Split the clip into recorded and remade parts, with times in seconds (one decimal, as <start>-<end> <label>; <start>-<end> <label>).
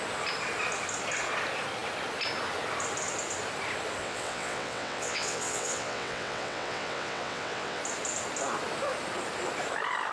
0.0-4.0 recorded; 4.0-7.8 remade; 7.8-10.1 recorded